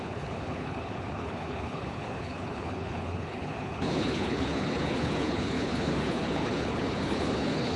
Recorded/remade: remade